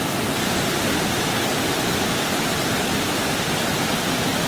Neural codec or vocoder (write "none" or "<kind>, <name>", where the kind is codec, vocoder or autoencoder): none